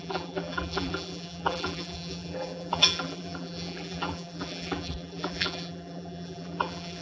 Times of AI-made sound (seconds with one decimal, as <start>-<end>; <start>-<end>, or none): 0.0-7.0